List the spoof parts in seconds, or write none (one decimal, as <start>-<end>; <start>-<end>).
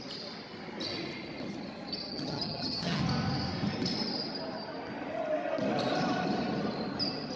2.1-3.0